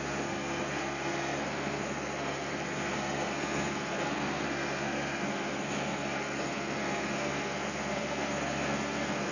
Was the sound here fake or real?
fake